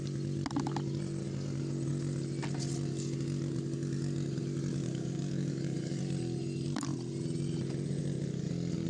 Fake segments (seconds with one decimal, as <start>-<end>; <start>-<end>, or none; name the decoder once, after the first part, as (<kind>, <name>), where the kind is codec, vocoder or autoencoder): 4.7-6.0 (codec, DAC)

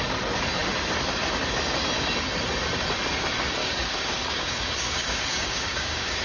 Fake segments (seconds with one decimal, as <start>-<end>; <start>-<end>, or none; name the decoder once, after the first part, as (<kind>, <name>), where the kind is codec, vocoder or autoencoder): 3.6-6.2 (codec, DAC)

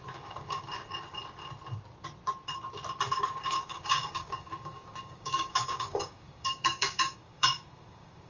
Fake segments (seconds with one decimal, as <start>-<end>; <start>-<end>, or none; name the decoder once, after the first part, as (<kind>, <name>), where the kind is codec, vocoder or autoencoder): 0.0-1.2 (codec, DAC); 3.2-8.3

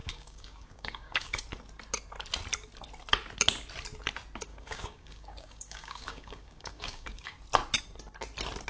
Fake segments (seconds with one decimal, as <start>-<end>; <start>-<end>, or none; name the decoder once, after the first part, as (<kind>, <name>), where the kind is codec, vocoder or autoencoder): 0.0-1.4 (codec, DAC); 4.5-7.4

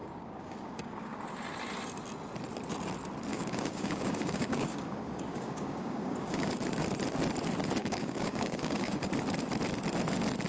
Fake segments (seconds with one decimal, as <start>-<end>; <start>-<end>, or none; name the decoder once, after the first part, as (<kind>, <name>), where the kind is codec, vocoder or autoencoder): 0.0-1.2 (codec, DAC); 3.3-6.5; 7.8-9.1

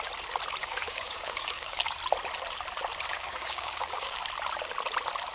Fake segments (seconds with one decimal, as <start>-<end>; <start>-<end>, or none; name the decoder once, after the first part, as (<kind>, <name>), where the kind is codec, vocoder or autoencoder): 0.6-2.0 (codec, DAC); 3.1-4.2

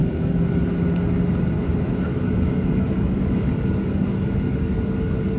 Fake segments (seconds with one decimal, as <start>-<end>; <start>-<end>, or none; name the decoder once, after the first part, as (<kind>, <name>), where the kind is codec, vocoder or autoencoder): 0.0-0.6 (codec, DAC); 2.1-5.4